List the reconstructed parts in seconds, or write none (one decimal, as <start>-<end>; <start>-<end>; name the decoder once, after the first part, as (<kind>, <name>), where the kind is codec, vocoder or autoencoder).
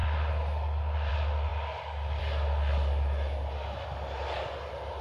none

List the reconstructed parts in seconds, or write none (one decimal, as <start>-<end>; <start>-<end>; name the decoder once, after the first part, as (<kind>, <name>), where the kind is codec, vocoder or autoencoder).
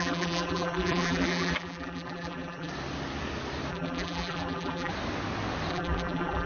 0.0-2.7 (vocoder, BigVGAN v2); 3.7-4.9; 5.7-6.5